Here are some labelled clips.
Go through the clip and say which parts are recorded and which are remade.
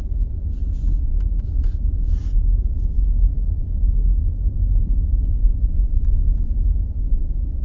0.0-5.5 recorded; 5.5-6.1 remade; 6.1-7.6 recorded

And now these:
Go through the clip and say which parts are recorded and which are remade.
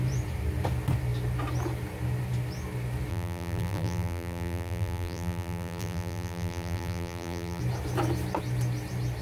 0.0-3.1 recorded; 3.1-7.6 remade; 7.6-9.2 recorded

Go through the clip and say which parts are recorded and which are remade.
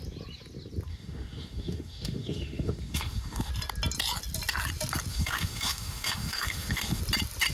0.0-0.9 recorded; 0.9-3.5 remade; 3.5-5.1 recorded; 5.1-7.0 remade; 7.0-7.5 recorded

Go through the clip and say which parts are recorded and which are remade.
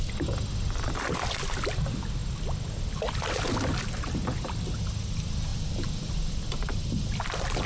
0.0-7.7 recorded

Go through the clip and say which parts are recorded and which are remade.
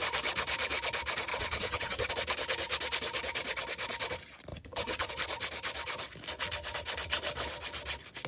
0.0-1.3 recorded; 1.3-2.1 remade; 2.1-4.5 recorded; 4.5-5.1 remade; 5.1-8.3 recorded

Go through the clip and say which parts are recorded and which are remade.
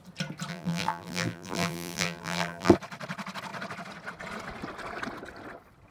0.0-0.5 recorded; 0.5-2.7 remade; 2.7-5.9 recorded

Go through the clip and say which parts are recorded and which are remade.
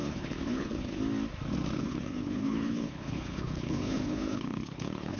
0.0-1.0 remade; 1.0-1.8 recorded; 1.8-5.2 remade